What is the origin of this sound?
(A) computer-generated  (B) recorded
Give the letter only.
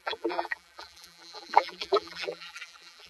A